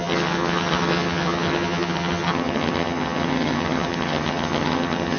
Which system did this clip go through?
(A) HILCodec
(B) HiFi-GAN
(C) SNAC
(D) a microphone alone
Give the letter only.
B